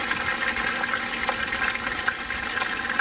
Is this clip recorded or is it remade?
recorded